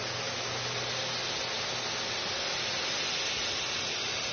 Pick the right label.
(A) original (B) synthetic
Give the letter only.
A